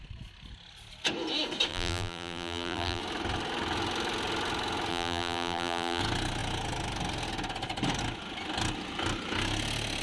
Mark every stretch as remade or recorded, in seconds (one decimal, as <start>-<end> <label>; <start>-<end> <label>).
0.0-1.7 recorded; 1.7-3.0 remade; 3.0-4.9 recorded; 4.9-6.0 remade; 6.0-10.0 recorded